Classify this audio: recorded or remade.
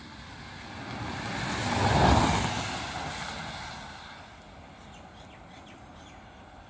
recorded